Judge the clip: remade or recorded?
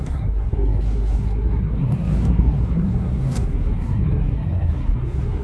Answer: remade